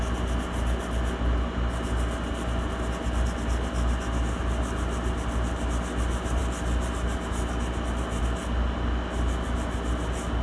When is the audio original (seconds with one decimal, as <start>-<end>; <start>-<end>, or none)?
0.0-10.4